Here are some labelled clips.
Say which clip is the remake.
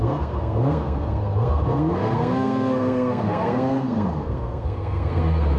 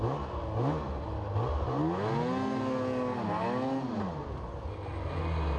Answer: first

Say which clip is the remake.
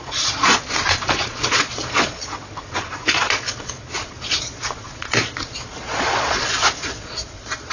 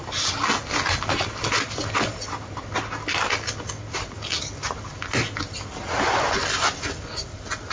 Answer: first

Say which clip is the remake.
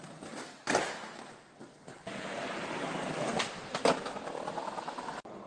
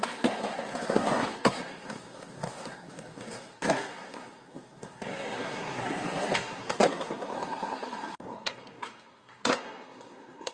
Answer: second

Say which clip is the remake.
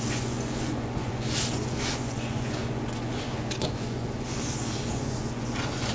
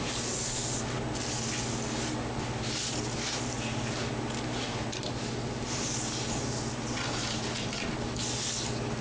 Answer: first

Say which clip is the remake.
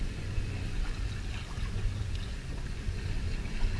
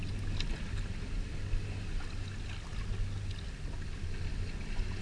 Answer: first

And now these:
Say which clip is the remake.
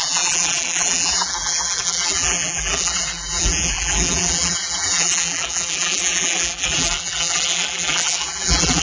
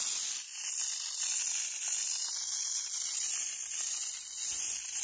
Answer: first